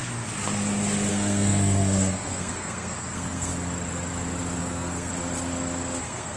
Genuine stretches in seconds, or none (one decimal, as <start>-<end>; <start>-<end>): 0.0-1.1; 3.5-4.6; 5.1-6.0

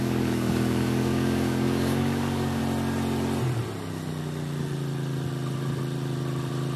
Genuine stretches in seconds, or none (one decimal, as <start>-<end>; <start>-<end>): 2.6-6.8

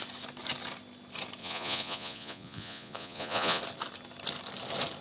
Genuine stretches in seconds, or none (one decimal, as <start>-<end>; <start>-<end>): 0.0-1.4; 3.6-5.0

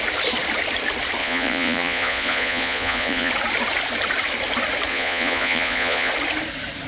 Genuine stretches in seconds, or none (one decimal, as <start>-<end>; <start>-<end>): 0.0-1.2; 3.3-4.9; 6.1-6.9